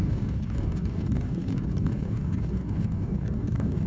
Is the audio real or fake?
fake